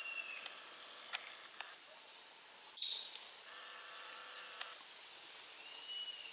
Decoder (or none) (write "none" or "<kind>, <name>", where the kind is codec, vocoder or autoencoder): none